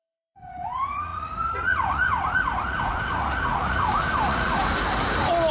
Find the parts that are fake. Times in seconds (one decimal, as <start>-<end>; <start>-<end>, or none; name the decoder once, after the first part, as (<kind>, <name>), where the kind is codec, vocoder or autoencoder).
0.0-4.6 (vocoder, Vocos)